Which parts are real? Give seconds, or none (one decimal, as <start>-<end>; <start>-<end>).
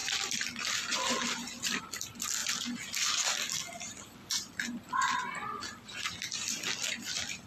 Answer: 0.7-7.5